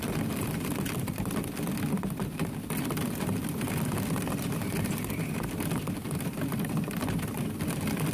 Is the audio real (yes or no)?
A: no